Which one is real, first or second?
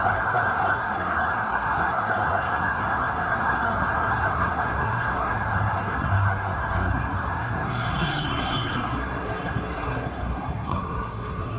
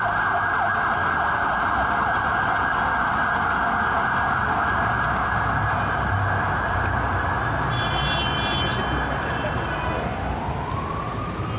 second